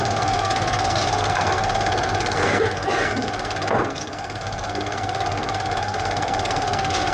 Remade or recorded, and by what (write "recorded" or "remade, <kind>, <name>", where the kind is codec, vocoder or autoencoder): remade, codec, SNAC